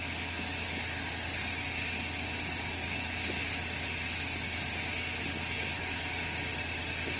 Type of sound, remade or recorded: recorded